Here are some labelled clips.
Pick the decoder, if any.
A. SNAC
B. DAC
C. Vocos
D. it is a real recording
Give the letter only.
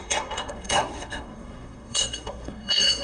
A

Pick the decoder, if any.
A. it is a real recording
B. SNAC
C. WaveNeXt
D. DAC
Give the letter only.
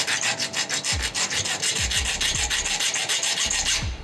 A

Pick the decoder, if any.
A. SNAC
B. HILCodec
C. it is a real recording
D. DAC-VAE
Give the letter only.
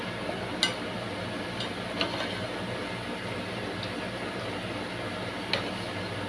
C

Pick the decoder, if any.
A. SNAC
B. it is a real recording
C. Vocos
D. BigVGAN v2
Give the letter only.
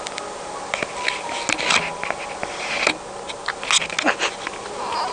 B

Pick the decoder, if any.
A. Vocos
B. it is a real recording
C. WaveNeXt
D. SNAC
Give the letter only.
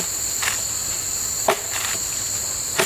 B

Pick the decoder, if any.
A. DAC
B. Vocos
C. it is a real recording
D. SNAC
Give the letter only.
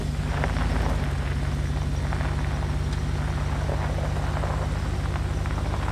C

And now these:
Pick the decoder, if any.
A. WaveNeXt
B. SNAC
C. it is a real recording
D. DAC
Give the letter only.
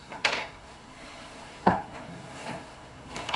B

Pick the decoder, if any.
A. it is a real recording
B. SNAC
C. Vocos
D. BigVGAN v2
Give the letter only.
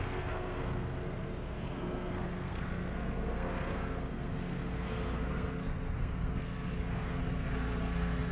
B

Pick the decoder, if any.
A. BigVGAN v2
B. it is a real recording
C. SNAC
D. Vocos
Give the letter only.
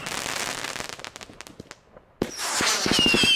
B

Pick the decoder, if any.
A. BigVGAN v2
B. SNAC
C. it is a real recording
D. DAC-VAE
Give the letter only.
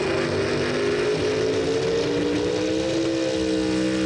C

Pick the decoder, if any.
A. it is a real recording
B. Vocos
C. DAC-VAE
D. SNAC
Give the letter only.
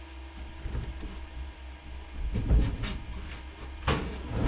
A